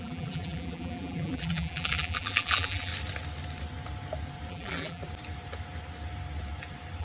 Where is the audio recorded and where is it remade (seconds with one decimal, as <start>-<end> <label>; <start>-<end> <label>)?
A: 0.0-2.9 remade; 2.9-4.5 recorded; 4.5-5.0 remade; 5.0-7.0 recorded